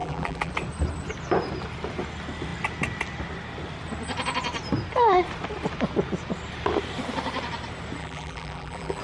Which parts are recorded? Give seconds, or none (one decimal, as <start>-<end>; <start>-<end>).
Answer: 0.5-8.0